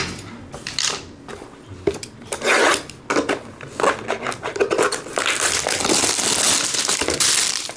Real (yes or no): yes